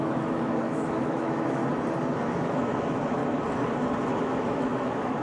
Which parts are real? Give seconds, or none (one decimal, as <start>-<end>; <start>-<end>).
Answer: 1.6-2.2; 3.2-4.2